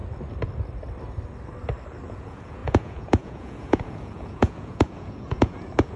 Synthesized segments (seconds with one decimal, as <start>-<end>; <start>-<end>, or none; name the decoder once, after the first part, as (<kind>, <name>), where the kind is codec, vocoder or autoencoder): 2.1-6.0 (vocoder, Vocos)